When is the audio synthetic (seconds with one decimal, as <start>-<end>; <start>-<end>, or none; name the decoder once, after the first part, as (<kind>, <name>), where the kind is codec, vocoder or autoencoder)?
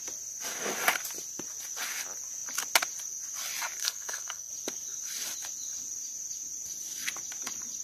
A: 3.8-4.5 (codec, SNAC)